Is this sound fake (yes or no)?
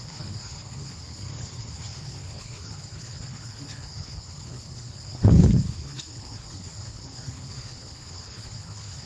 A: yes